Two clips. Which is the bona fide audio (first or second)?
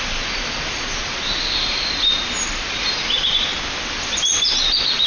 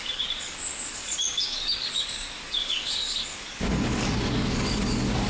first